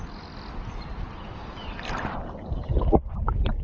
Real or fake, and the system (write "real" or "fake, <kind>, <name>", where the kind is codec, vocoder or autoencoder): fake, vocoder, BigVGAN v2